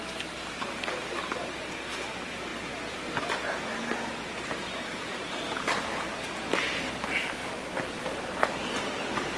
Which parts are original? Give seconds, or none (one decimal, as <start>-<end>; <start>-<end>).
0.0-9.4